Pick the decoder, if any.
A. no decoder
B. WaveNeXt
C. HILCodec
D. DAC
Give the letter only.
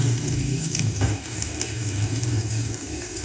D